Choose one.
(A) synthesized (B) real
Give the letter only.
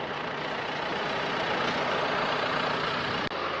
B